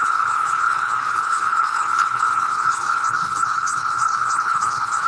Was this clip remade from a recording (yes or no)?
yes